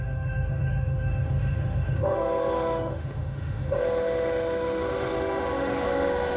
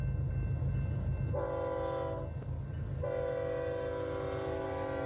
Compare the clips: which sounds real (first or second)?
second